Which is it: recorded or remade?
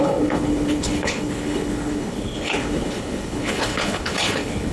remade